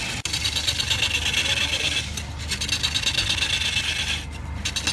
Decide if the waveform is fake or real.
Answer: real